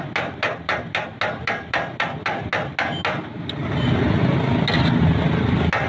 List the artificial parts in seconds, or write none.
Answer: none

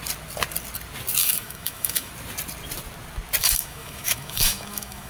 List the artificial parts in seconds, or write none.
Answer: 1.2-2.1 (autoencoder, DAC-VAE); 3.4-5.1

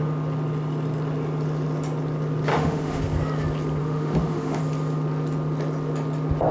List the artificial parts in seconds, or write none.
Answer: 2.5-3.0 (autoencoder, DAC-VAE); 3.8-4.6